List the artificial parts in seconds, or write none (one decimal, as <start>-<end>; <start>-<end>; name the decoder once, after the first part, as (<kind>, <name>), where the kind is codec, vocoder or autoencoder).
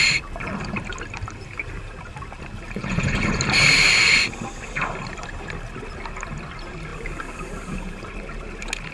2.8-3.4 (vocoder, Vocos)